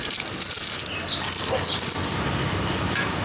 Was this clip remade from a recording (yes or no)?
no